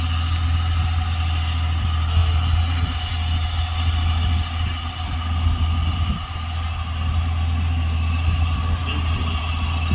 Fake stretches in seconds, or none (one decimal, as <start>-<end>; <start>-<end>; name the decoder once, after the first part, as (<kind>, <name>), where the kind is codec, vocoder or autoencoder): none